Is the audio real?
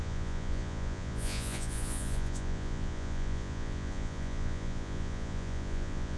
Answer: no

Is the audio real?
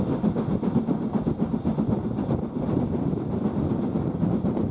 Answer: yes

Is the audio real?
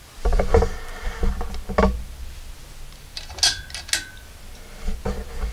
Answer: yes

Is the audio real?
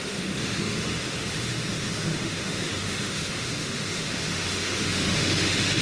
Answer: no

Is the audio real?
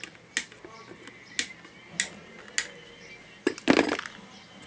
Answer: yes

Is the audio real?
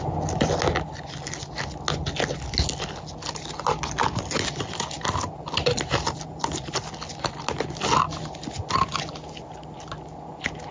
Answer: yes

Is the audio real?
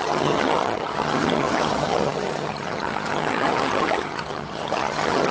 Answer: no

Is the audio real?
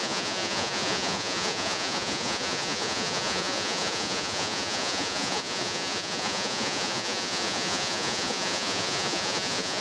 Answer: no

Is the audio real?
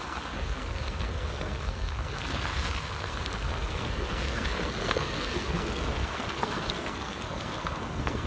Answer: no